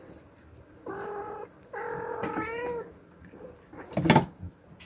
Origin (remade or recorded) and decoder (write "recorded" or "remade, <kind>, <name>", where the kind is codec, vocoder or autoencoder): recorded